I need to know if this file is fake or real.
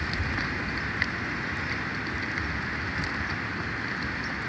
real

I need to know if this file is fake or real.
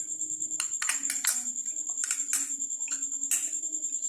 real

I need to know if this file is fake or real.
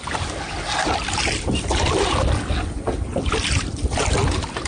real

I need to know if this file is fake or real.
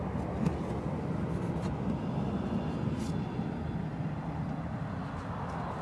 real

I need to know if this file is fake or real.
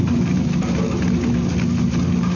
real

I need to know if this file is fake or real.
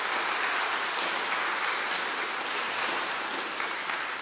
real